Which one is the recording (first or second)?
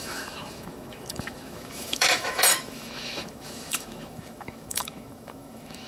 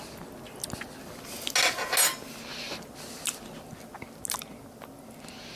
second